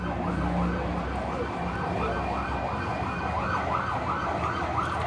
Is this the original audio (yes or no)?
yes